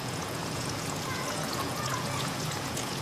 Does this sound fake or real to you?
fake